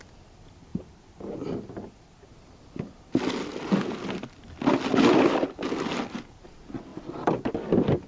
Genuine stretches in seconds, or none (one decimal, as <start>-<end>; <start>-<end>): 0.0-6.9; 7.5-8.1